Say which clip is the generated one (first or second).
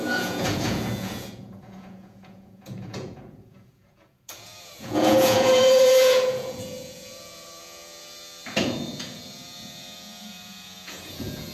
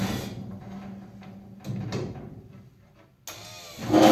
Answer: first